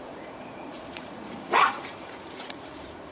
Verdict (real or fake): fake